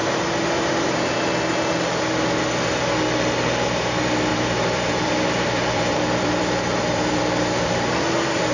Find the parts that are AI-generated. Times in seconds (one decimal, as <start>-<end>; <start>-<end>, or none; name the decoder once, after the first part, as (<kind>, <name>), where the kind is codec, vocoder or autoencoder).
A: 0.0-1.3 (vocoder, BigVGAN v2); 4.3-7.7